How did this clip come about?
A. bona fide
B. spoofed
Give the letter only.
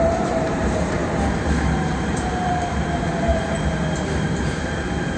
B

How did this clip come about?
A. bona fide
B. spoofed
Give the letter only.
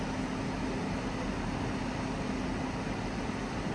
A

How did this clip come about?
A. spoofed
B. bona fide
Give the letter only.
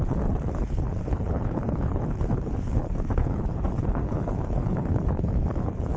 A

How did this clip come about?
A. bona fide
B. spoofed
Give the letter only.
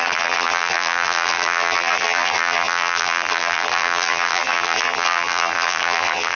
B